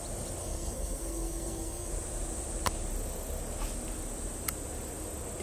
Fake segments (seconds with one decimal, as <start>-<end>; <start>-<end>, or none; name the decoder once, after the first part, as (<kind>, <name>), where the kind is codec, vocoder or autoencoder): 0.4-1.9 (codec, SNAC)